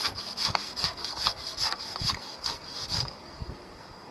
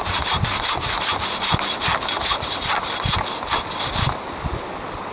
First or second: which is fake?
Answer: first